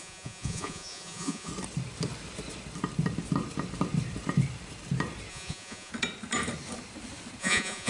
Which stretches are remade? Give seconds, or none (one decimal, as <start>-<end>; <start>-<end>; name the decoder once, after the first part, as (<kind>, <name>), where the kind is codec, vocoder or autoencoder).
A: 0.0-1.5 (vocoder, Vocos); 5.3-5.9; 7.4-7.9